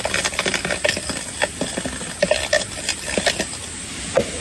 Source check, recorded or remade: recorded